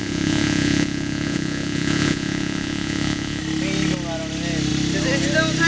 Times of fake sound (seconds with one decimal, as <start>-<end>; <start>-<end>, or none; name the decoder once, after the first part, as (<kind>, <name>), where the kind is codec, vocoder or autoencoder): 0.0-3.4 (vocoder, Vocos)